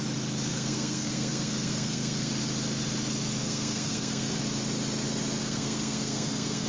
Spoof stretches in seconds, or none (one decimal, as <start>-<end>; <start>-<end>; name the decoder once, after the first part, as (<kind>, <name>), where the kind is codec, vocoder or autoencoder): 0.5-2.3 (codec, SNAC); 3.4-4.4; 5.4-6.7

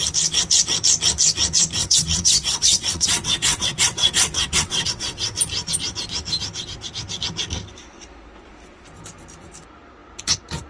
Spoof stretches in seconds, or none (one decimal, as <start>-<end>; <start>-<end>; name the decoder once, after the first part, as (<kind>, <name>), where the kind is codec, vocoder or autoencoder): 1.8-5.4 (vocoder, WaveNeXt)

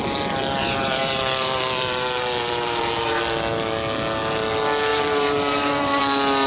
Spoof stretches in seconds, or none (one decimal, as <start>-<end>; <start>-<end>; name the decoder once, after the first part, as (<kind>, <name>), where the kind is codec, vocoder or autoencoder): 0.6-3.2 (vocoder, BigVGAN v2); 4.9-6.0

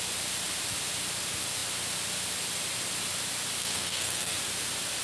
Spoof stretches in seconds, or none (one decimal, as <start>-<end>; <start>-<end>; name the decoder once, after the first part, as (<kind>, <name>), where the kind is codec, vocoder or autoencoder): 3.6-4.4 (codec, SNAC)

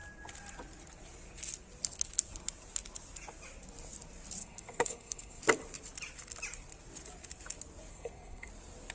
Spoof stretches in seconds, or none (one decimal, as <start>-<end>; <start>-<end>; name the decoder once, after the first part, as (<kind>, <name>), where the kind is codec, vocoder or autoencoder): 4.4-5.4 (codec, SNAC); 7.9-8.5

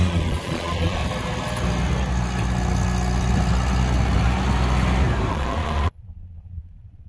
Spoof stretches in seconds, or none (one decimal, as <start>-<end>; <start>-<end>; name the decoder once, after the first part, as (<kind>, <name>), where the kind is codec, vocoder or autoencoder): 0.0-1.0 (vocoder, Vocos); 5.3-7.1